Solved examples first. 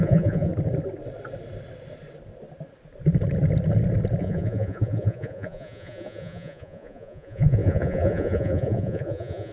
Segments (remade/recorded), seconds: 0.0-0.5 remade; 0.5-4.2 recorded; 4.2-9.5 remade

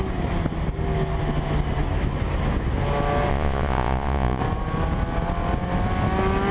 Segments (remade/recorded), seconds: 0.0-3.3 recorded; 3.3-4.4 remade; 4.4-6.5 recorded

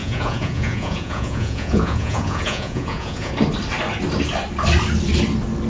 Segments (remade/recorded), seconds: 0.0-3.3 remade; 3.3-5.7 recorded

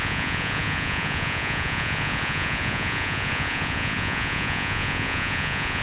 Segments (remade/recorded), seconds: 0.0-5.8 remade

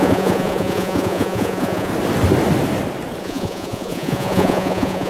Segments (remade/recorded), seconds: 0.0-1.9 remade; 1.9-3.2 recorded; 3.2-5.1 remade

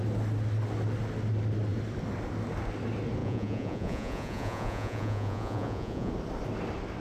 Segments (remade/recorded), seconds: 0.0-3.2 recorded; 3.2-6.1 remade; 6.1-7.0 recorded

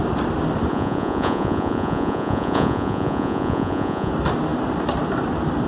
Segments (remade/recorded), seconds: 0.0-0.7 recorded; 0.7-4.1 remade; 4.1-5.7 recorded

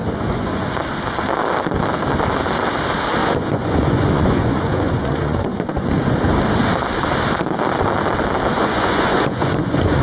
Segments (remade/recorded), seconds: 0.0-0.7 remade; 0.7-3.2 recorded; 3.2-5.9 remade; 5.9-8.5 recorded; 8.5-10.0 remade